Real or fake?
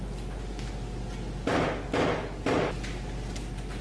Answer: real